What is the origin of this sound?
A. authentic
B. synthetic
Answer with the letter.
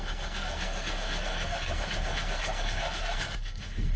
B